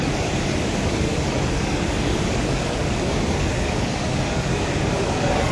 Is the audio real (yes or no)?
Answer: no